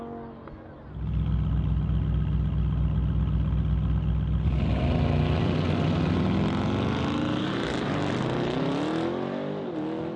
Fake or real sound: real